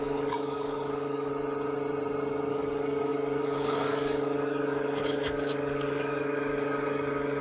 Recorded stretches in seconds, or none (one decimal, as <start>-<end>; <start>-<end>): 1.3-2.5